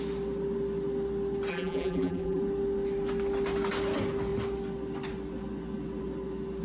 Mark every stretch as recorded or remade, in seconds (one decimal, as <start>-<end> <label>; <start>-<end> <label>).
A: 0.0-1.5 recorded; 1.5-2.4 remade; 2.4-6.6 recorded